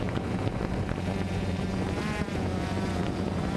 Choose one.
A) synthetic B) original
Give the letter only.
A